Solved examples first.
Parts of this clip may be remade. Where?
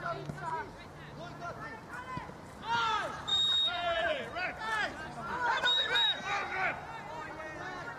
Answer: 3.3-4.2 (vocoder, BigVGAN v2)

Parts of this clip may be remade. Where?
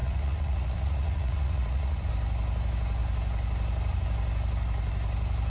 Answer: 0.0-2.1 (vocoder, Vocos)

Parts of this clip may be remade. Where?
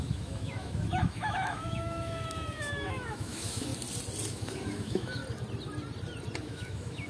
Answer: 0.0-3.7 (autoencoder, DAC-VAE); 4.3-5.2; 6.4-7.1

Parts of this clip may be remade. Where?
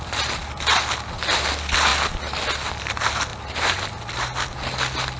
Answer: none